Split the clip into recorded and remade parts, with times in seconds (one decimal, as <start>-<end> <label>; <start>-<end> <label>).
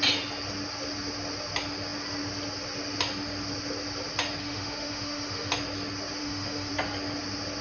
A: 0.0-4.4 recorded; 4.4-5.5 remade; 5.5-6.2 recorded; 6.2-6.7 remade; 6.7-7.6 recorded